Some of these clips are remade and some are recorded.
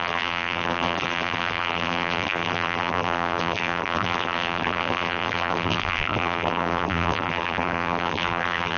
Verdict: remade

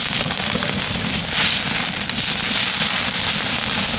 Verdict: recorded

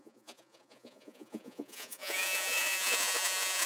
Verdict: remade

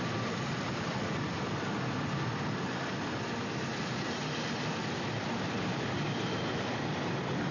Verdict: remade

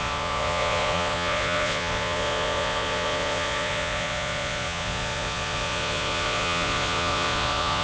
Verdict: remade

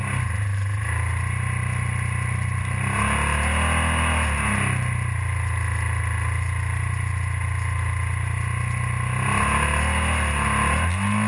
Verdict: recorded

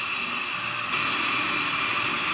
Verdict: recorded